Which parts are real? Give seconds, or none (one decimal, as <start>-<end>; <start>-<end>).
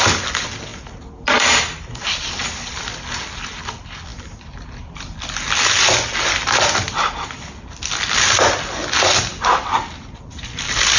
0.0-11.0